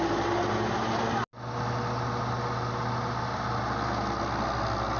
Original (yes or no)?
yes